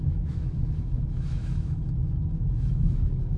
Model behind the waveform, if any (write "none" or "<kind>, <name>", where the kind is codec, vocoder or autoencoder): autoencoder, DAC-VAE